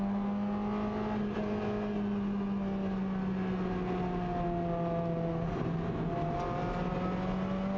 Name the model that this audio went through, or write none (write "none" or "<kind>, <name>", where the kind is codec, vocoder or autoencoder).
none